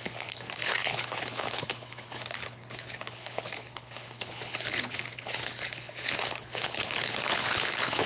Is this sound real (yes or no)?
no